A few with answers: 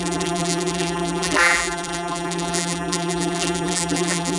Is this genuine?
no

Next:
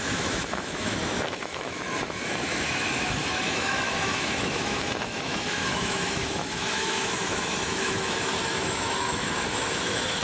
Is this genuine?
no